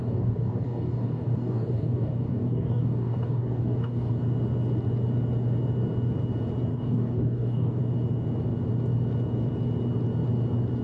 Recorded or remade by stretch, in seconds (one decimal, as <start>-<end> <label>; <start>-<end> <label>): 0.0-4.1 remade; 4.1-6.7 recorded; 6.7-7.8 remade; 7.8-10.8 recorded